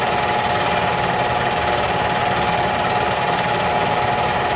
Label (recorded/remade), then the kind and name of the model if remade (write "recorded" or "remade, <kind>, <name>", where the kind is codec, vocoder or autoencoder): remade, vocoder, BigVGAN v2